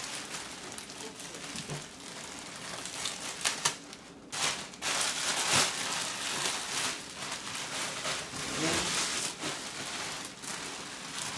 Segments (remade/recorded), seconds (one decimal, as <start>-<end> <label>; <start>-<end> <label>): 0.0-11.4 recorded